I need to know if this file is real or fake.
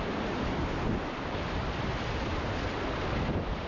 real